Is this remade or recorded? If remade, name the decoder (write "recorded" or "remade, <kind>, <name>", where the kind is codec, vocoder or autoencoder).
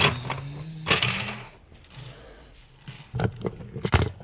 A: recorded